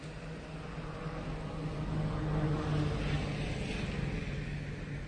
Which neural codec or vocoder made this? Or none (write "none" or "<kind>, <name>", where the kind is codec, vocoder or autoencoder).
none